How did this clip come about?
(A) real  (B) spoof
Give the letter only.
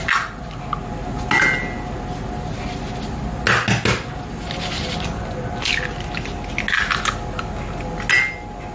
A